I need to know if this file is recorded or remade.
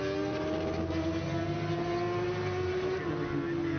recorded